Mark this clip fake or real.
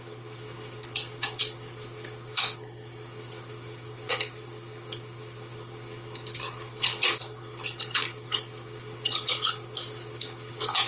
fake